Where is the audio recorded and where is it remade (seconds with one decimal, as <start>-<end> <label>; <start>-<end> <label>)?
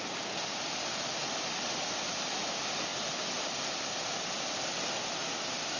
0.0-1.2 remade; 1.2-1.8 recorded; 1.8-5.8 remade